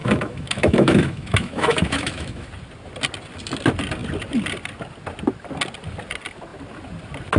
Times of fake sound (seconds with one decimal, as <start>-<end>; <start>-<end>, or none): 0.0-2.5